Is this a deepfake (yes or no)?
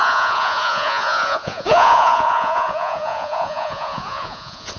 yes